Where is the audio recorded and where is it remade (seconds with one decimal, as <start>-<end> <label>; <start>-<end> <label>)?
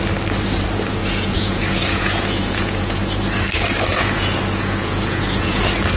0.0-1.0 recorded; 1.0-3.0 remade; 3.0-3.9 recorded; 3.9-5.6 remade; 5.6-6.0 recorded